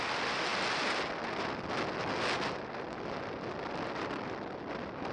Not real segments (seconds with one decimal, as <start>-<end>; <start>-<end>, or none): none